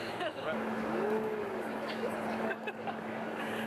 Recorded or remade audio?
remade